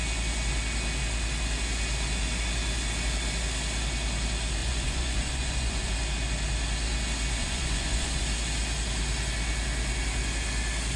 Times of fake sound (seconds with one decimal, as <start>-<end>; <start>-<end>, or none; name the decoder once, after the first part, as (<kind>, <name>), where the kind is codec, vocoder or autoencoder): 4.6-5.9 (vocoder, Vocos); 7.4-8.2